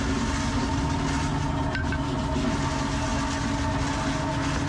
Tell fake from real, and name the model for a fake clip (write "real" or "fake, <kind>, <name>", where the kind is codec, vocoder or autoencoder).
real